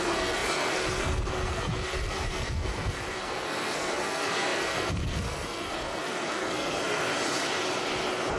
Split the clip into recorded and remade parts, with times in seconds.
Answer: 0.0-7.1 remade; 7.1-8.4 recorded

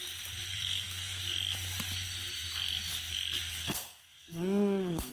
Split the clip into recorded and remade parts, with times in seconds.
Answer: 0.0-0.5 recorded; 0.5-1.2 remade; 1.2-3.6 recorded; 3.6-5.1 remade

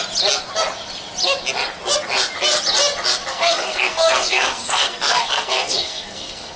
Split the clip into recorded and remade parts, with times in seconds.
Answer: 0.0-3.3 recorded; 3.3-6.6 remade

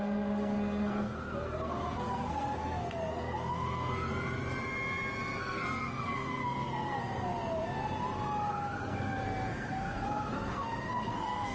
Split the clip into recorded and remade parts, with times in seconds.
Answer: 0.0-4.1 remade; 4.1-5.4 recorded; 5.4-7.3 remade; 7.3-8.5 recorded; 8.5-11.5 remade

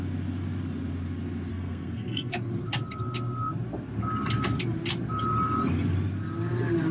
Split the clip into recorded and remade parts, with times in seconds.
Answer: 0.0-1.5 recorded; 1.5-2.3 remade; 2.3-6.9 recorded

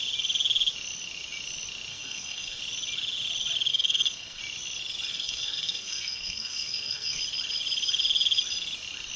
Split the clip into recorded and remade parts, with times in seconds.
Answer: 0.0-1.9 recorded; 1.9-2.6 remade; 2.6-3.7 recorded; 3.7-4.4 remade; 4.4-5.1 recorded; 5.1-7.2 remade; 7.2-9.2 recorded

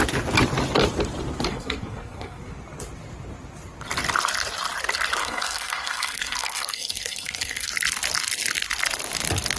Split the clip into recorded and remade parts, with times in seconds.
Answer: 0.0-1.5 recorded; 1.5-2.4 remade; 2.4-5.2 recorded; 5.2-7.7 remade; 7.7-9.6 recorded

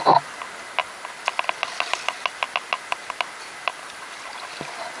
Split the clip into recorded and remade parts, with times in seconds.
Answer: 0.0-5.0 recorded